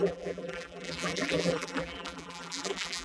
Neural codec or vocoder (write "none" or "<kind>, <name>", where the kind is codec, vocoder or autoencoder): vocoder, BigVGAN v2